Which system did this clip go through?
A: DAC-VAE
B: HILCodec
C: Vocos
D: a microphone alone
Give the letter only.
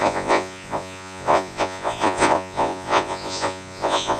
C